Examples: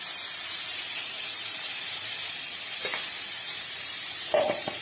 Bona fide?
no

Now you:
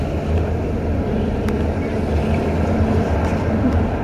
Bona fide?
yes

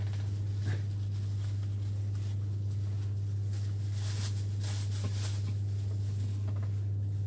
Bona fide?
yes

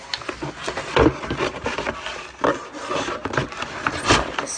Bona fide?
yes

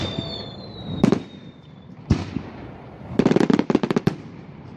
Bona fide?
no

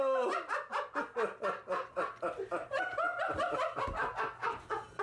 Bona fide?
yes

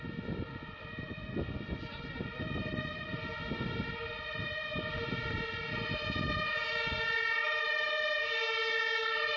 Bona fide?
yes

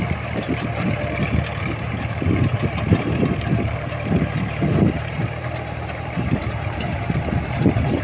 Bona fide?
no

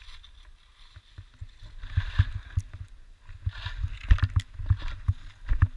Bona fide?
yes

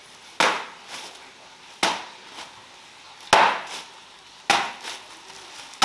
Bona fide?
yes